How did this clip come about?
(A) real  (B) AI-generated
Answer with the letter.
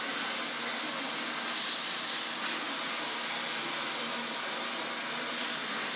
A